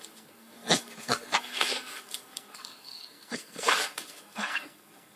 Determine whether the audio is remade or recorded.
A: remade